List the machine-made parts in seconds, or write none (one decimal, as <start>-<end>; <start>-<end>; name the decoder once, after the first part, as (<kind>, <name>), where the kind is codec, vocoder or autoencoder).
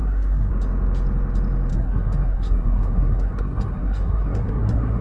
0.0-0.5 (codec, SNAC); 1.7-5.0